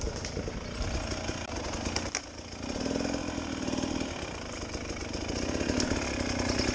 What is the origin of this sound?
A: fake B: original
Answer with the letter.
B